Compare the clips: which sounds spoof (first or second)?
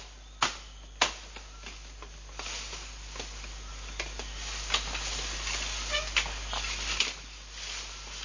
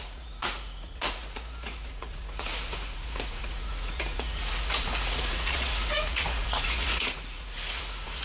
second